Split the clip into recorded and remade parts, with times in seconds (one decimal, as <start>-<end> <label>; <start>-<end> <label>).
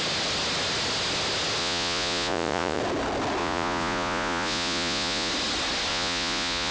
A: 0.0-1.6 recorded; 1.6-2.8 remade; 2.8-3.4 recorded; 3.4-5.3 remade; 5.3-5.9 recorded; 5.9-6.7 remade